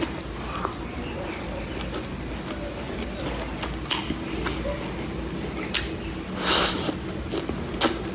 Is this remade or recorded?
recorded